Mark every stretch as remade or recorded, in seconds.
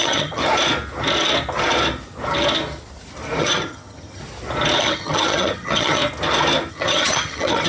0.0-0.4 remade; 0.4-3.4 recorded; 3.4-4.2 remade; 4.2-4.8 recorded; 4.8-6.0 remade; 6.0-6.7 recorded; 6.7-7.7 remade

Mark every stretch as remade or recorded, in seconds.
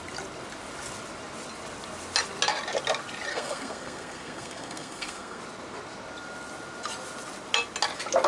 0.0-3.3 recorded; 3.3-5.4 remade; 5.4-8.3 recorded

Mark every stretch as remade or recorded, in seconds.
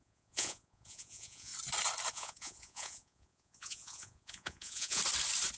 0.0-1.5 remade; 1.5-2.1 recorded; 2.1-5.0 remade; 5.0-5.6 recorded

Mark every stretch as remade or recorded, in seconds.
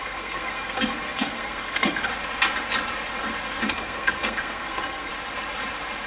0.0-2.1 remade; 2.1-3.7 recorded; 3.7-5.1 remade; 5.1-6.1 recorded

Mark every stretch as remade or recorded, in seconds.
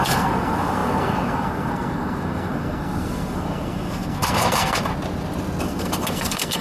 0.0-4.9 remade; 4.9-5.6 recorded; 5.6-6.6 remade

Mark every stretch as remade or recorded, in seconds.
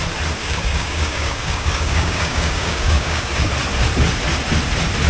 0.0-0.4 recorded; 0.4-3.5 remade; 3.5-5.1 recorded